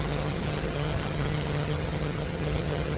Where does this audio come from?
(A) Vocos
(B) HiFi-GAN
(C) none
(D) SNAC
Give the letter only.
B